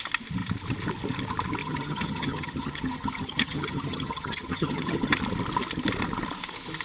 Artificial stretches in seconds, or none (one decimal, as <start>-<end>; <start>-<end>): 1.6-5.2